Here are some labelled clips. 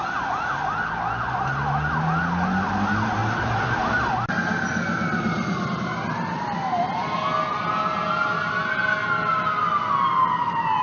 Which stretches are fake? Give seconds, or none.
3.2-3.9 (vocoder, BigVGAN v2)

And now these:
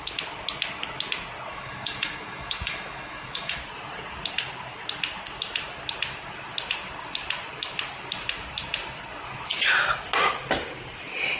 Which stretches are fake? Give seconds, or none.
1.5-3.6 (autoencoder, DAC-VAE)

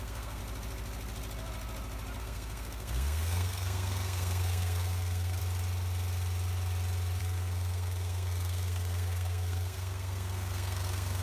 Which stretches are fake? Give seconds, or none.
0.0-0.4 (codec, SNAC); 2.2-5.4; 7.2-11.2

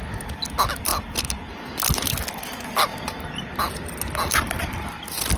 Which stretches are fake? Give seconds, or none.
none

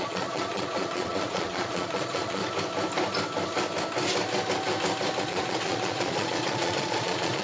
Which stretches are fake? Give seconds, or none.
0.0-2.4 (vocoder, Vocos); 5.2-7.4

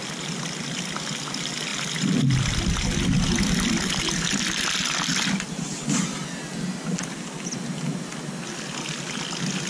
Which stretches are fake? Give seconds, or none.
none